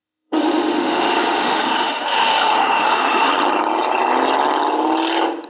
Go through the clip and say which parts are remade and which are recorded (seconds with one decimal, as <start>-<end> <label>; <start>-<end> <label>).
0.0-3.3 remade; 3.3-5.5 recorded